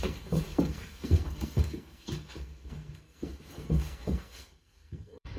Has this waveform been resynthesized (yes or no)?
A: yes